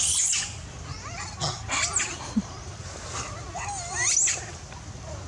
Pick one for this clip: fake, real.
real